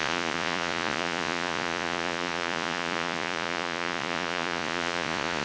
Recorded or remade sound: remade